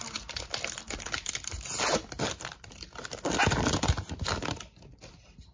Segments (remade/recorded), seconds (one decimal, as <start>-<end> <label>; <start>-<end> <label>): 0.0-5.5 recorded